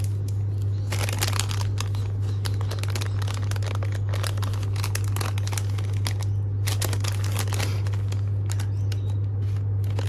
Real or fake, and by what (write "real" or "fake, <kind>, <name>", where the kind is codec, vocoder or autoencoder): real